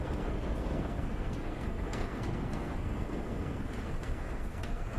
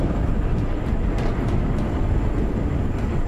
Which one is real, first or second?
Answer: second